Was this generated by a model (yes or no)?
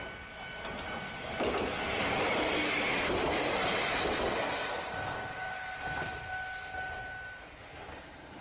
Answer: no